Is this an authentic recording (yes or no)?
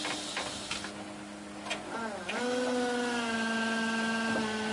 yes